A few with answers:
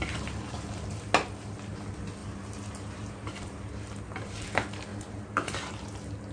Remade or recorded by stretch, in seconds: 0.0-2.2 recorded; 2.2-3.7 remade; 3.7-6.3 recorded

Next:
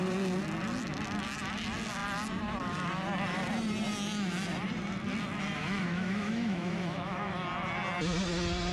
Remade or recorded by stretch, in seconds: 0.0-5.6 recorded; 5.6-7.3 remade; 7.3-8.7 recorded

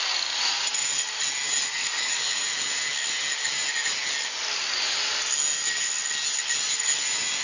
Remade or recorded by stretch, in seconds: 0.0-1.8 recorded; 1.8-2.4 remade; 2.4-7.4 recorded